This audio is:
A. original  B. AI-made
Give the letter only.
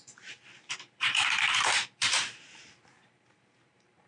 B